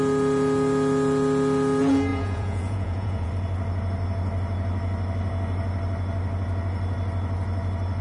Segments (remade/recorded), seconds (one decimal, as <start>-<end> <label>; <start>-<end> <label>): 0.0-2.1 recorded; 2.1-3.3 remade; 3.3-8.0 recorded